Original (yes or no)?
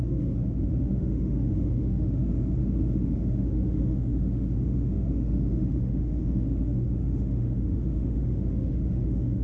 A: no